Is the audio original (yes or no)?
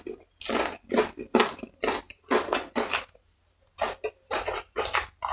yes